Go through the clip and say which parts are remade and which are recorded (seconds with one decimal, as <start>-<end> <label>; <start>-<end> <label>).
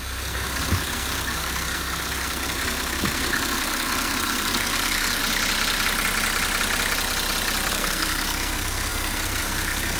0.0-5.2 remade; 5.2-7.7 recorded; 7.7-10.0 remade